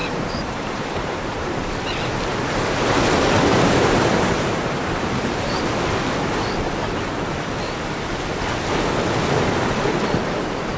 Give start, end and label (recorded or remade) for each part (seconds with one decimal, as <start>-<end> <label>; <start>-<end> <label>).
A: 0.0-1.7 remade; 1.7-3.5 recorded; 3.5-5.8 remade; 5.8-10.8 recorded